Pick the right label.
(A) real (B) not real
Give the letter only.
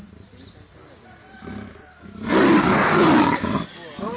A